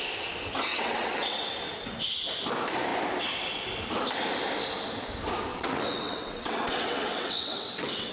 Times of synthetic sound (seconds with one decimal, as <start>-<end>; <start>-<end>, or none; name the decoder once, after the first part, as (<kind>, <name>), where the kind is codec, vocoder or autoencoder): 0.7-1.5 (vocoder, WaveNeXt); 5.5-8.1